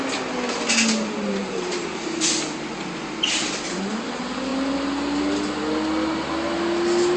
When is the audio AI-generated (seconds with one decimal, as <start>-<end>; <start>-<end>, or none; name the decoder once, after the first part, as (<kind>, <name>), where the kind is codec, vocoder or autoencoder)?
1.4-2.2 (vocoder, BigVGAN v2)